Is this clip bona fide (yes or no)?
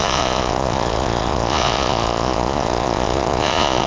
no